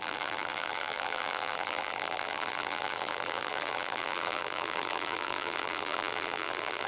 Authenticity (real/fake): fake